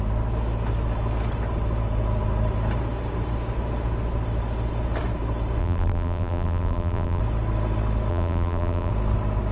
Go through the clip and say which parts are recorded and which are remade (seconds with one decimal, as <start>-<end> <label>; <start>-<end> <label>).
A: 0.0-5.6 recorded; 5.6-7.2 remade; 7.2-8.1 recorded; 8.1-8.9 remade; 8.9-9.5 recorded

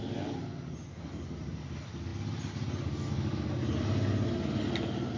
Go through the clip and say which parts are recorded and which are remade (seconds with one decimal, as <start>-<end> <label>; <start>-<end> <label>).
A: 0.0-5.2 recorded